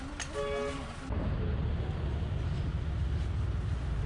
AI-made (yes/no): no